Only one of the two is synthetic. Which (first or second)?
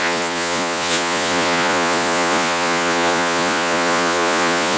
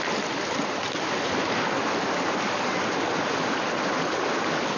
first